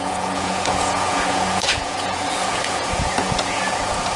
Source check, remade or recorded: remade